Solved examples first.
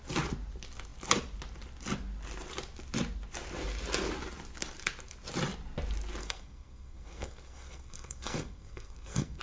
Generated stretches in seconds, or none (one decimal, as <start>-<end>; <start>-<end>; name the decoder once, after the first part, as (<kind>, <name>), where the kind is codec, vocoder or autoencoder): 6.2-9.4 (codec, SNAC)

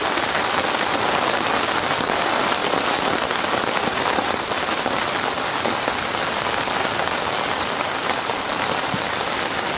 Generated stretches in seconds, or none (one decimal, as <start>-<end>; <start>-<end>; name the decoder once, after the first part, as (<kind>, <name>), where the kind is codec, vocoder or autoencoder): none

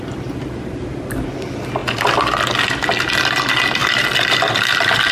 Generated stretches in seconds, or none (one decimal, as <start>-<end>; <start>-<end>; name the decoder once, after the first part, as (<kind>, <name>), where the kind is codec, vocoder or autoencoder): none

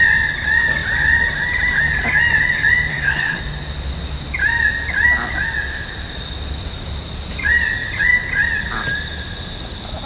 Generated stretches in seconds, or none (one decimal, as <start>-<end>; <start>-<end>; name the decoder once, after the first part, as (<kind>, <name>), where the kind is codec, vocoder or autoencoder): 2.9-3.4 (codec, SNAC)